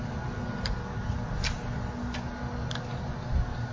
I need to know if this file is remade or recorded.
recorded